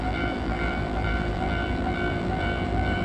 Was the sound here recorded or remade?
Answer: remade